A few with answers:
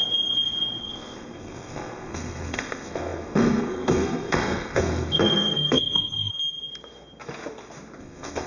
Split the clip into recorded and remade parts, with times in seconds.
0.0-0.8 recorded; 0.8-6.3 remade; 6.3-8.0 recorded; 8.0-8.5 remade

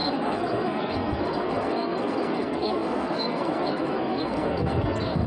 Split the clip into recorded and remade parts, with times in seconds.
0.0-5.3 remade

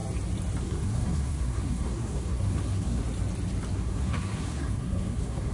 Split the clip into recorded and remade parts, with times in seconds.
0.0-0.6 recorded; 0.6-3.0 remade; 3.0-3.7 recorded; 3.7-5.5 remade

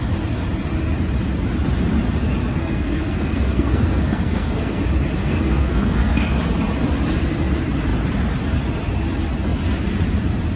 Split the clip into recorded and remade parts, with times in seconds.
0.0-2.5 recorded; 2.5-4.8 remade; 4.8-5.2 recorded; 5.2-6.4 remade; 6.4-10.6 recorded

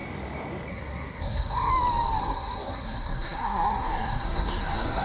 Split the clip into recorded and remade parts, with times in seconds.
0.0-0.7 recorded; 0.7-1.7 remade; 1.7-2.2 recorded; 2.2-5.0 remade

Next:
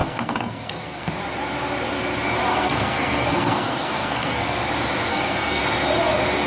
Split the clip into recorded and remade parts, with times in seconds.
0.0-1.1 remade; 1.1-2.5 recorded; 2.5-4.6 remade; 4.6-5.1 recorded; 5.1-5.6 remade; 5.6-6.5 recorded